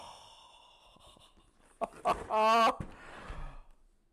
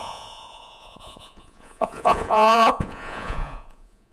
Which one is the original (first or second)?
first